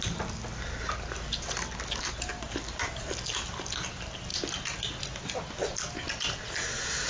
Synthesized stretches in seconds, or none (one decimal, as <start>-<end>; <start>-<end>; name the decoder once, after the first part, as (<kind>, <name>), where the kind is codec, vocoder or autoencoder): 2.3-3.3 (vocoder, BigVGAN v2)